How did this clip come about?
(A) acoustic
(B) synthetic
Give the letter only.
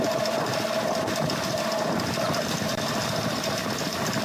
A